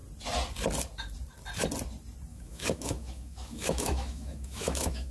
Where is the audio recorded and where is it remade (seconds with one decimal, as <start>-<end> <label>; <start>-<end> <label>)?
0.0-2.3 recorded; 2.3-5.1 remade